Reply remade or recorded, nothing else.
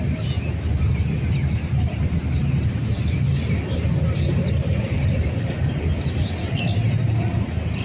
recorded